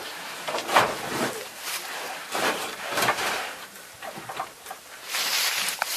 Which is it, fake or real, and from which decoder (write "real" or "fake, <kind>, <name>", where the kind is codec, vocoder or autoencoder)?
fake, vocoder, BigVGAN v2